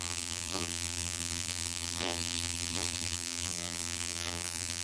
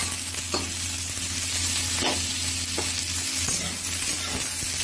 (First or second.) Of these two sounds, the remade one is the first